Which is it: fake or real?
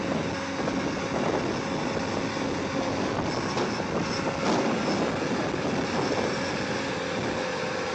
real